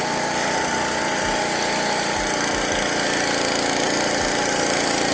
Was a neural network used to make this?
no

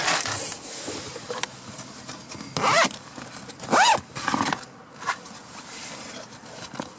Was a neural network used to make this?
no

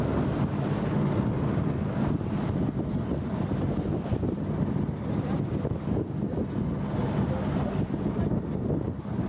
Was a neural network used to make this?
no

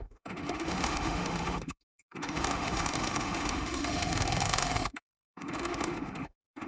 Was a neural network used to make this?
yes